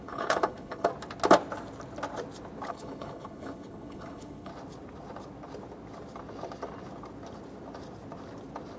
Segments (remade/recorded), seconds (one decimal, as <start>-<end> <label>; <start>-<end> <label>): 0.0-0.9 remade; 0.9-2.7 recorded; 2.7-4.5 remade; 4.5-8.8 recorded